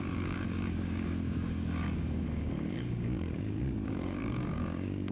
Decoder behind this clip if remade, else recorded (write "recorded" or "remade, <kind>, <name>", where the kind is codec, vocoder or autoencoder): remade, codec, DAC